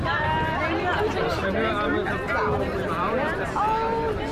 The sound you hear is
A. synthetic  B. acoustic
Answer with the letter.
B